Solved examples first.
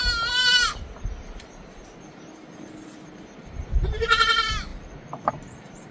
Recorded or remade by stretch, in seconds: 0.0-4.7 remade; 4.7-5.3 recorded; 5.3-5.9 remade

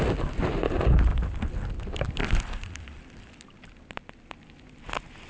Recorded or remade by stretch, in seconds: 0.0-1.1 recorded; 1.1-1.8 remade; 1.8-2.2 recorded; 2.2-4.1 remade; 4.1-5.3 recorded

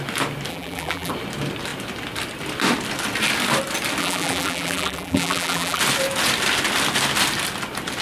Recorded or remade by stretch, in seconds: 0.0-0.5 recorded; 0.5-1.1 remade; 1.1-4.0 recorded; 4.0-5.8 remade; 5.8-8.0 recorded